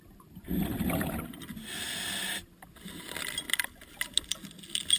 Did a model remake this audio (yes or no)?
no